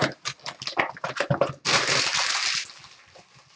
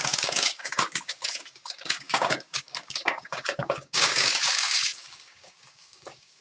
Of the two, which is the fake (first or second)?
second